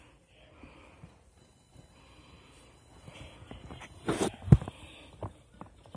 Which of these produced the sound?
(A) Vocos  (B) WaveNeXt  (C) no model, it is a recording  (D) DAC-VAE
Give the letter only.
C